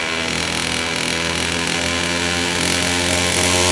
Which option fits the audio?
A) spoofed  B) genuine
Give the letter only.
B